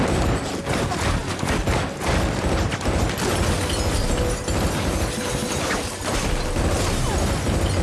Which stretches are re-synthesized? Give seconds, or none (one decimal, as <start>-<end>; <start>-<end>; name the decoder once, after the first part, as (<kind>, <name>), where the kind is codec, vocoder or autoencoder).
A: none